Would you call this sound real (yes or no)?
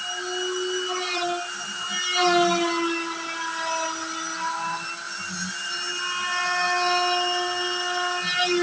yes